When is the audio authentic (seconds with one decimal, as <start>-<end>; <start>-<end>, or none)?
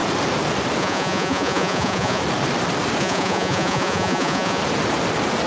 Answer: 0.0-0.8; 2.2-3.0; 4.6-5.5